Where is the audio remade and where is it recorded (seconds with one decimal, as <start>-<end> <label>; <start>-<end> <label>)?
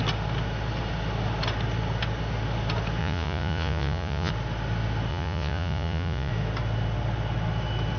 0.0-3.0 recorded; 3.0-4.3 remade; 4.3-5.1 recorded; 5.1-6.3 remade; 6.3-8.0 recorded